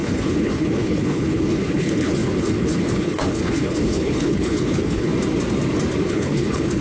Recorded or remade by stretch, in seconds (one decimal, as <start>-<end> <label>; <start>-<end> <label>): 0.0-5.1 remade; 5.1-6.1 recorded; 6.1-6.8 remade